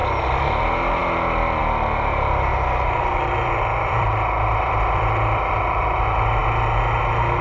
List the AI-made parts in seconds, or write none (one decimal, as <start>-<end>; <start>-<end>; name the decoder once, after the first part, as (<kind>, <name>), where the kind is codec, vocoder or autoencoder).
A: 0.0-0.6 (vocoder, BigVGAN v2); 1.0-1.6; 2.5-5.4